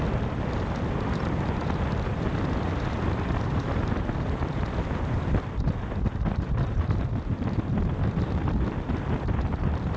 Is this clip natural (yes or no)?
no